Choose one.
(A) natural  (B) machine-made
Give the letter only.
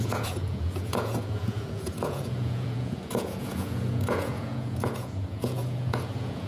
B